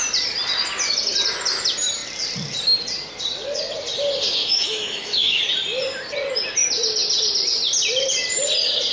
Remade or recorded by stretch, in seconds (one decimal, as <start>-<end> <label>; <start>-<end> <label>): 0.0-4.4 recorded; 4.4-5.4 remade; 5.4-8.9 recorded